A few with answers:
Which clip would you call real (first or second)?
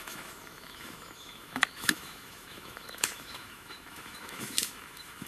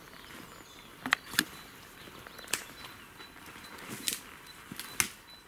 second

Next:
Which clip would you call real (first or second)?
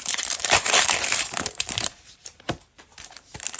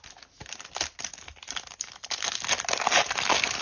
second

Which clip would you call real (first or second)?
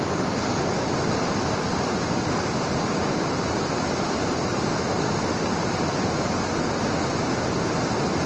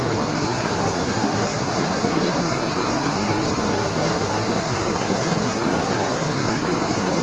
first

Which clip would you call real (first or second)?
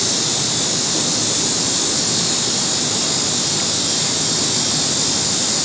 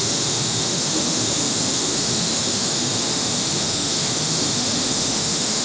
first